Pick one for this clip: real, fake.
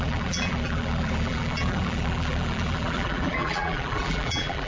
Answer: fake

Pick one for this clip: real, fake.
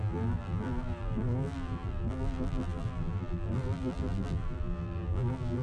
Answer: fake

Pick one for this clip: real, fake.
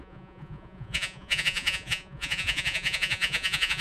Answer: fake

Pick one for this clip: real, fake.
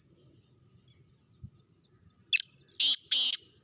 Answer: real